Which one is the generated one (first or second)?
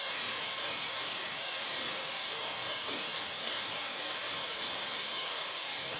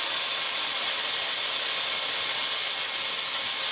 first